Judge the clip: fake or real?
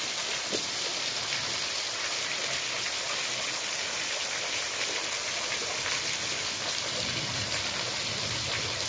real